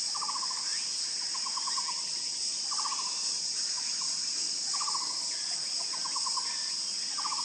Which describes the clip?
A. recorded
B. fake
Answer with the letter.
A